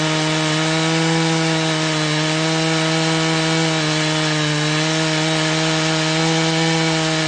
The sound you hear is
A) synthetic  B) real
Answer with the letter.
B